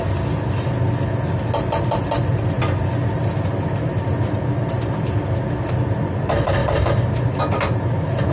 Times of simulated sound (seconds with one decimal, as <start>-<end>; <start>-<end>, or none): 6.6-7.4